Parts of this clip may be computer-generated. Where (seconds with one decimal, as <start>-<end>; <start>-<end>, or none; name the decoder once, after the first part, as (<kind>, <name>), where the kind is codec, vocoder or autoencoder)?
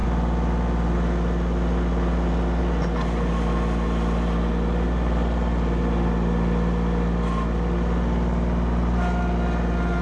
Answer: none